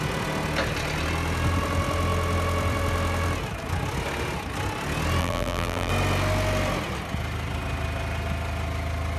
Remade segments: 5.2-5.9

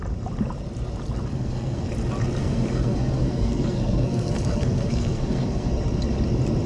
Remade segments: 1.3-1.9; 2.4-5.7

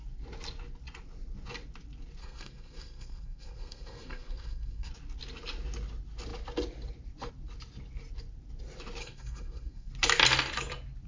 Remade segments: 2.2-4.9; 9.0-9.9

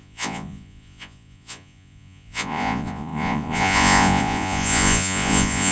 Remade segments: 0.0-5.7